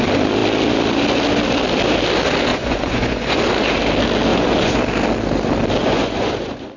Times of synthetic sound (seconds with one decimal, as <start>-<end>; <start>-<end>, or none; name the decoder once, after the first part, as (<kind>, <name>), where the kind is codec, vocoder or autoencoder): 2.5-3.4 (vocoder, Vocos); 4.3-4.8; 5.8-6.8